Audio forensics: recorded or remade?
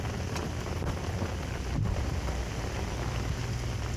recorded